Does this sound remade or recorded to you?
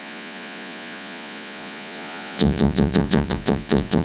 remade